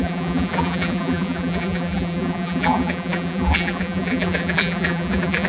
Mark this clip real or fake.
fake